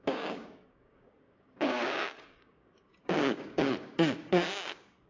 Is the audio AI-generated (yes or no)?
yes